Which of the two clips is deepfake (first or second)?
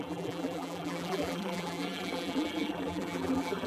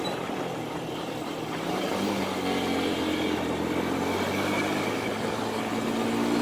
first